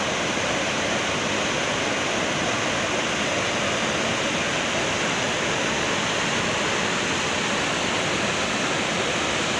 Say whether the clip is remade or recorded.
recorded